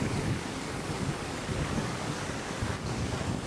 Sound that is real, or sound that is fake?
fake